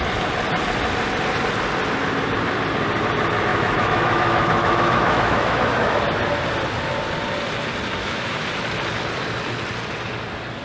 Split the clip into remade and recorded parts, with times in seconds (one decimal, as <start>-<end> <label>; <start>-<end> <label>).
0.0-3.5 recorded; 3.5-6.0 remade; 6.0-8.0 recorded; 8.0-8.5 remade; 8.5-10.6 recorded